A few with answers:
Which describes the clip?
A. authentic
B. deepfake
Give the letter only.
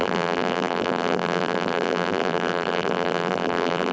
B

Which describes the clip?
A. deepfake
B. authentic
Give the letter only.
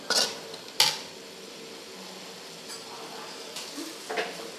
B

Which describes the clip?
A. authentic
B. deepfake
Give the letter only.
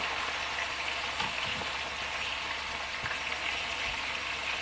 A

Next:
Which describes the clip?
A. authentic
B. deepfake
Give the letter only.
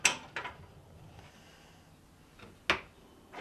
A